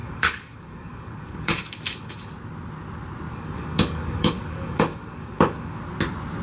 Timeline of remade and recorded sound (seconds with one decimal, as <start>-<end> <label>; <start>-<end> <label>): 0.0-2.3 remade; 2.3-3.3 recorded; 3.3-5.8 remade; 5.8-6.4 recorded